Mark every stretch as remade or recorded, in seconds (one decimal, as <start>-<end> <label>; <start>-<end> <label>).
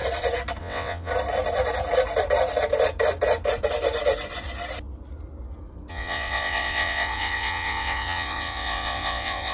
0.0-0.6 recorded; 0.6-1.1 remade; 1.1-5.9 recorded; 5.9-9.5 remade